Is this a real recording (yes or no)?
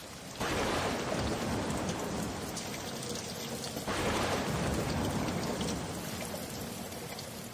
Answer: yes